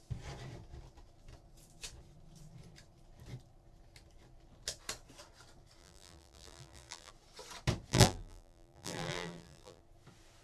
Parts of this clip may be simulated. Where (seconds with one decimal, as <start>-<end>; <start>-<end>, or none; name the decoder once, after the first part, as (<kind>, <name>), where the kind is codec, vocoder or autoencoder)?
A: 5.8-7.1 (vocoder, BigVGAN v2); 7.9-9.8